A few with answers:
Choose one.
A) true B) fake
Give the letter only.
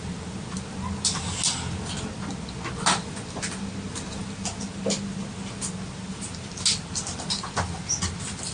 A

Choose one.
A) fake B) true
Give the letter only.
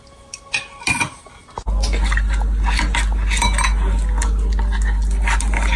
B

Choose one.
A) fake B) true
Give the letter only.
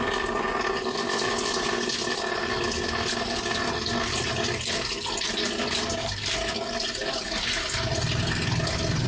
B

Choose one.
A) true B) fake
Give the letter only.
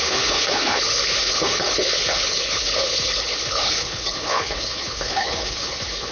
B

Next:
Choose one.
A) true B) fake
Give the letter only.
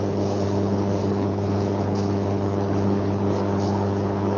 B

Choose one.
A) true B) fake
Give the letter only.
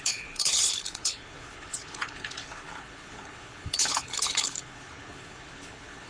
B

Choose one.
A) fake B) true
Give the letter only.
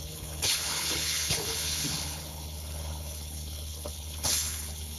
A